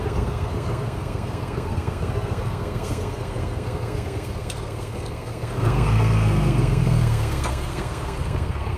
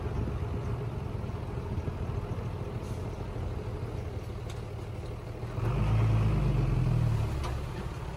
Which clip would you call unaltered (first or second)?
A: second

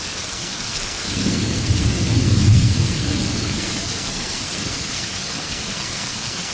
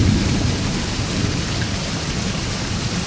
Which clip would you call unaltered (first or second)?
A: second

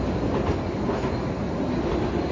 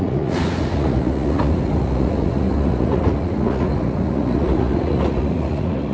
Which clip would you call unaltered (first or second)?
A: first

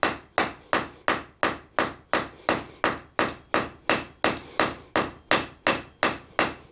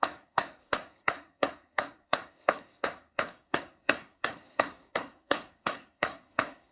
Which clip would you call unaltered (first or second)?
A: first